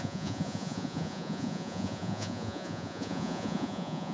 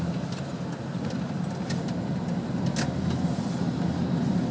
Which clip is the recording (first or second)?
second